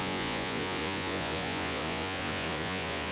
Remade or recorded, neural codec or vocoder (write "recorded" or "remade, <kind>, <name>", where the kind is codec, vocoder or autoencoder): remade, vocoder, Vocos